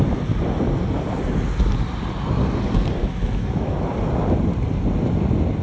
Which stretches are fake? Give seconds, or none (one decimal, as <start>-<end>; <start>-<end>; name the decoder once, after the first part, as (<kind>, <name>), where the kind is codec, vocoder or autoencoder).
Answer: 3.0-3.9 (autoencoder, DAC-VAE)